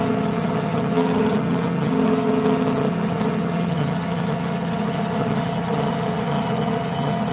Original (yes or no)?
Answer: no